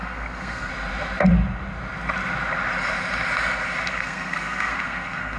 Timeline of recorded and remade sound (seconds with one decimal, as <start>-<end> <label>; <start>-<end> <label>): 0.0-0.7 remade; 0.7-3.9 recorded; 3.9-5.4 remade